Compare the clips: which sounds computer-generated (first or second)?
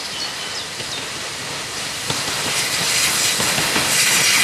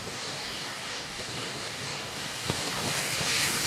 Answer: second